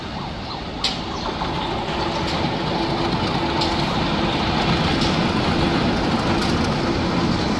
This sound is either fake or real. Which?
real